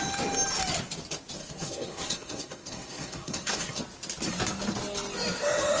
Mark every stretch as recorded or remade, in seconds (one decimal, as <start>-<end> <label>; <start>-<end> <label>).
0.0-1.4 recorded; 1.4-3.8 remade; 3.8-5.8 recorded